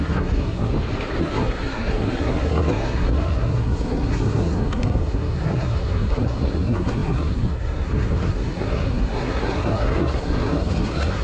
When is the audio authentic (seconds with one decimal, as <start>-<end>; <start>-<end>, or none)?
0.7-1.2